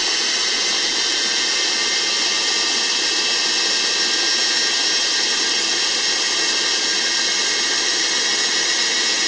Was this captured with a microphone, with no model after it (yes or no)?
yes